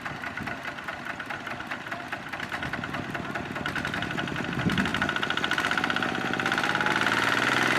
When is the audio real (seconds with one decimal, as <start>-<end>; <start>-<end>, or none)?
0.0-0.9; 2.6-7.8